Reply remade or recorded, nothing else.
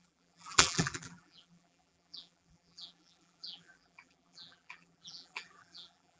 remade